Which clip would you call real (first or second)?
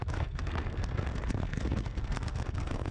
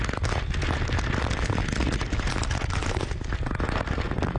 second